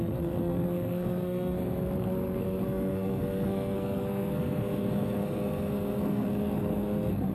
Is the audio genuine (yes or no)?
no